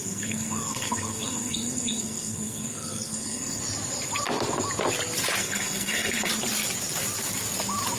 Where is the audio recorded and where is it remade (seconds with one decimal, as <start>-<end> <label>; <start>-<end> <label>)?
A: 0.0-3.6 remade; 3.6-5.4 recorded; 5.4-6.3 remade; 6.3-8.0 recorded